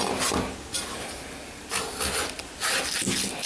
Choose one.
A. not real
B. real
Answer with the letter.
B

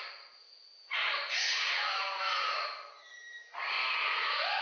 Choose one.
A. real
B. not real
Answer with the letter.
A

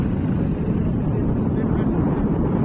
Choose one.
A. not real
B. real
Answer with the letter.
A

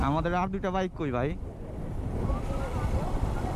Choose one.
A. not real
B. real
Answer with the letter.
B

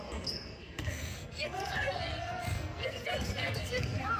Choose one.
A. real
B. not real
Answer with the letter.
B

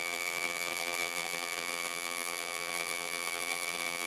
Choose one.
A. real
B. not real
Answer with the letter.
B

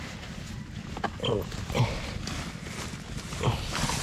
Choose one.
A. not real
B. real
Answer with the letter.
B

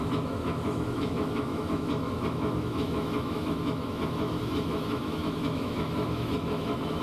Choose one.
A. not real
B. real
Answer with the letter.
A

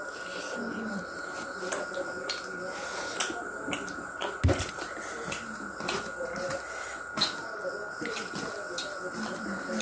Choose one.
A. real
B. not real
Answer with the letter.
A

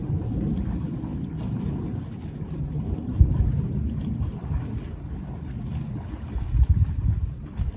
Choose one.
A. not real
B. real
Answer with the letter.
B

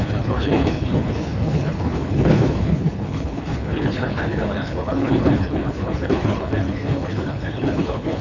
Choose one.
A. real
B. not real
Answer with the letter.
B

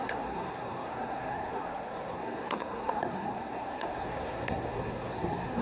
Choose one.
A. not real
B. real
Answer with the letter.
A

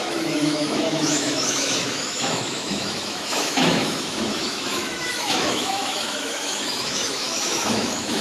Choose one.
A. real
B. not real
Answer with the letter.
B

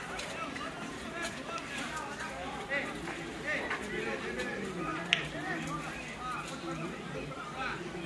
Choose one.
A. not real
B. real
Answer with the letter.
B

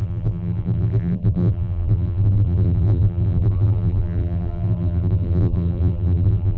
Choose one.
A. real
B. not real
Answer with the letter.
B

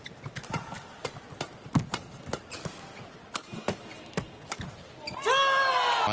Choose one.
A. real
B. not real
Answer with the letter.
A